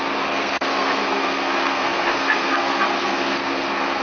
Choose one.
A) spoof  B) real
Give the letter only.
A